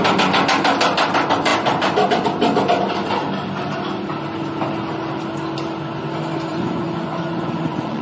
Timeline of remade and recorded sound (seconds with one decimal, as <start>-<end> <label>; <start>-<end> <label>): 0.0-6.5 recorded; 6.5-8.0 remade